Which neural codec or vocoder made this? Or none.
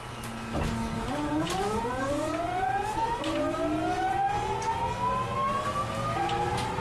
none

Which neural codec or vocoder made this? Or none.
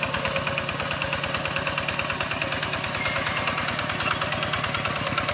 none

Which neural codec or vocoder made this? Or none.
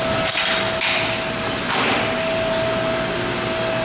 none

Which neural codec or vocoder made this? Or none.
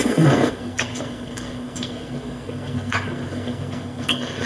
codec, SNAC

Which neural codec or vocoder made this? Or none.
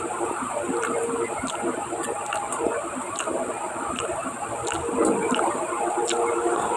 none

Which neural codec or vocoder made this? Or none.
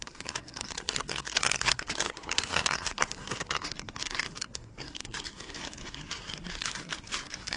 codec, SNAC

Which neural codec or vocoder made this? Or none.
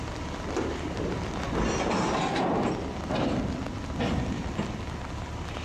none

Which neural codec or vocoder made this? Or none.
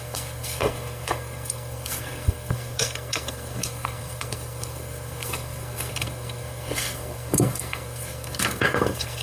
codec, SNAC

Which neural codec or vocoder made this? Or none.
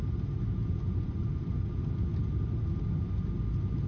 none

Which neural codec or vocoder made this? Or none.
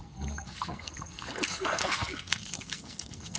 codec, SNAC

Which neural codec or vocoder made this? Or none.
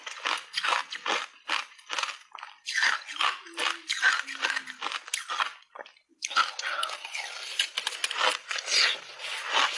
none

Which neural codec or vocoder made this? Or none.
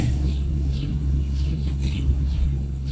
codec, SNAC